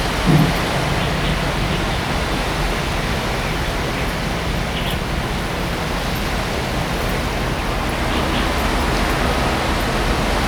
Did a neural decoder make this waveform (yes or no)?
no